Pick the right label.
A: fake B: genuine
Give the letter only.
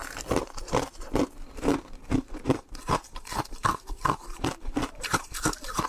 A